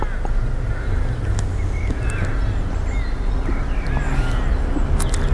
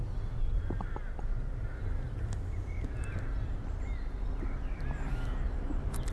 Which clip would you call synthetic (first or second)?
second